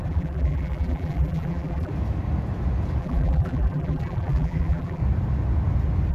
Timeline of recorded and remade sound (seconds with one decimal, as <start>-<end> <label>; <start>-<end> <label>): 0.0-1.9 remade; 1.9-3.0 recorded; 3.0-5.0 remade; 5.0-6.1 recorded